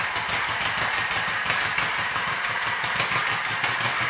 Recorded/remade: recorded